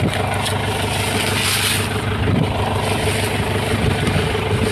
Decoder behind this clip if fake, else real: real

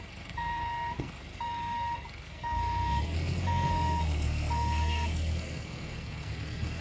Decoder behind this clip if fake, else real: fake, codec, SNAC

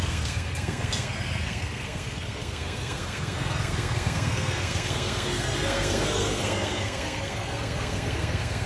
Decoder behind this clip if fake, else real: fake, codec, SNAC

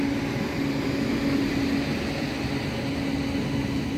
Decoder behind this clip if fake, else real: real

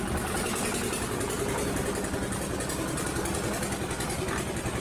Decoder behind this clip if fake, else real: real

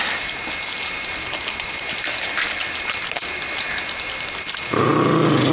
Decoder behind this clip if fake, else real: real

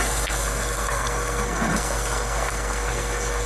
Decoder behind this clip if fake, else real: fake, codec, SNAC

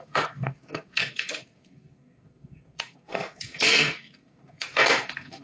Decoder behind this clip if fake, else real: fake, codec, SNAC